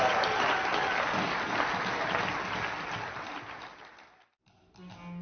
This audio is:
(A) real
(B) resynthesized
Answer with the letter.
A